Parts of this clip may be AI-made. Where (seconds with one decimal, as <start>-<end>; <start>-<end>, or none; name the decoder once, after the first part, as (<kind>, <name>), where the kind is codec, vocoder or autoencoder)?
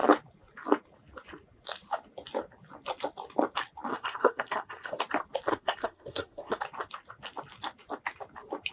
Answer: 3.9-5.0 (codec, SNAC); 5.5-6.6